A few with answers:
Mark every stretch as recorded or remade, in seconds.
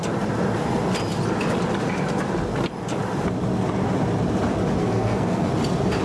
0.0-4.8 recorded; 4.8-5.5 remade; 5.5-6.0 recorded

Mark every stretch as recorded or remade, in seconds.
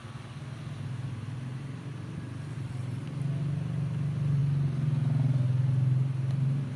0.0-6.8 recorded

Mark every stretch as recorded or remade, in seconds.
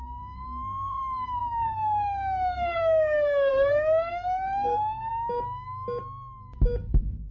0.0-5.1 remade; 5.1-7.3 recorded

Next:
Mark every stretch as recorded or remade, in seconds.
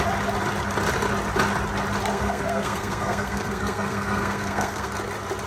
0.0-2.1 recorded; 2.1-4.9 remade; 4.9-5.5 recorded